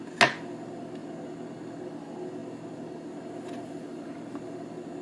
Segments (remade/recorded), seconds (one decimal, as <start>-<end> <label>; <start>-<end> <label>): 0.0-5.0 recorded